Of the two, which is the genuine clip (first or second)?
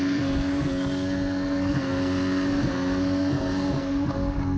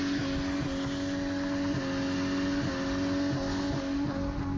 second